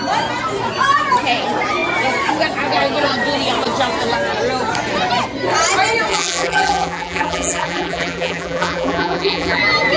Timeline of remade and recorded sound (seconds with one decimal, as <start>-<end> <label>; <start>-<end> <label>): 0.0-6.1 recorded; 6.1-9.6 remade; 9.6-10.0 recorded